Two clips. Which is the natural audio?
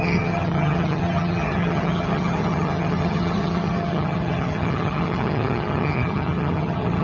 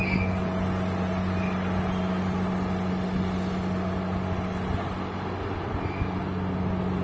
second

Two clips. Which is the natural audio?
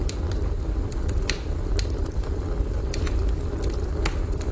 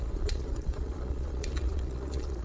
first